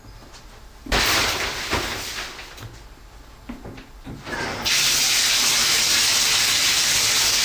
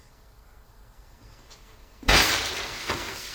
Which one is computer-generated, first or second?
second